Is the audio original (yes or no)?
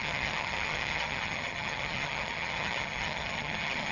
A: no